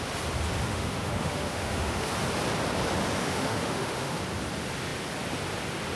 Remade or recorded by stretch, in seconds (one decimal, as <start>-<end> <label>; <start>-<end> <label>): 0.0-0.7 recorded; 0.7-2.1 remade; 2.1-3.2 recorded; 3.2-4.2 remade; 4.2-6.0 recorded